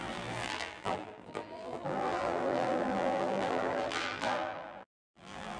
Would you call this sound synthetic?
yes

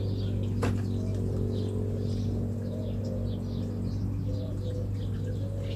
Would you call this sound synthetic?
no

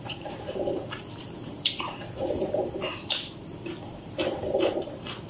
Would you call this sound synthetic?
yes